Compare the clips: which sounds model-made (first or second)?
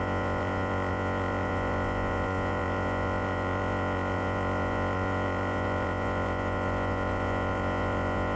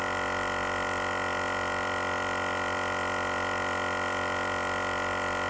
first